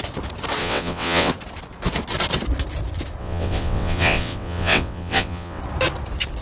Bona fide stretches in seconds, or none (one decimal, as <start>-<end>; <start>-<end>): 0.0-0.6; 1.3-3.2; 5.6-6.4